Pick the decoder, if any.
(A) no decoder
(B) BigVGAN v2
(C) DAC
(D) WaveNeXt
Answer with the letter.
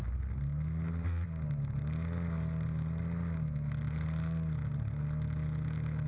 A